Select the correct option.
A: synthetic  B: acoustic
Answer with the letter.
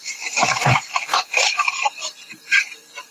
A